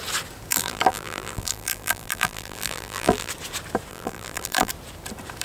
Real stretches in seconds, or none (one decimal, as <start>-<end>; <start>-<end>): 0.0-0.5; 3.3-3.9; 4.7-5.4